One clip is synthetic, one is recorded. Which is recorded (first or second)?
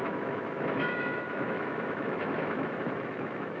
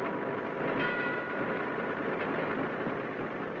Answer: second